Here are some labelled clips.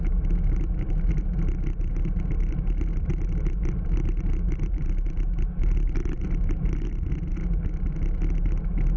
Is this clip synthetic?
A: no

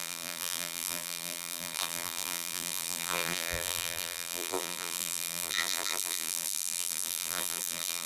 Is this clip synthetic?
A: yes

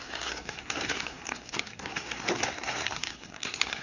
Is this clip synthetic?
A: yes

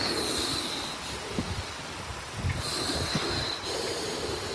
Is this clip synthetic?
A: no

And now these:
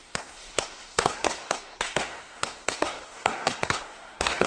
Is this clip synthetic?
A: yes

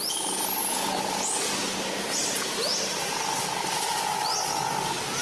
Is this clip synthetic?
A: no